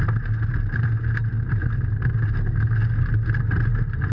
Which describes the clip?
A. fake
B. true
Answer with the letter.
B